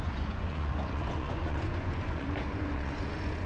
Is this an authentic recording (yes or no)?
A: no